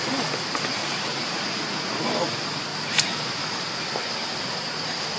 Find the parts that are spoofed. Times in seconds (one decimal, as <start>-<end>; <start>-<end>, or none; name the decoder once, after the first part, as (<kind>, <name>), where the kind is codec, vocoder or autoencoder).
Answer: 0.8-2.0 (vocoder, Vocos)